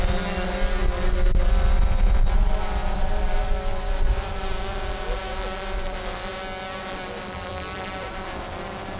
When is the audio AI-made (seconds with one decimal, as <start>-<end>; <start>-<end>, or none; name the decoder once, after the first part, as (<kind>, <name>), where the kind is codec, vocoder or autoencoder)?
none